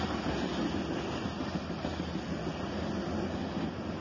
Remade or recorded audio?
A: recorded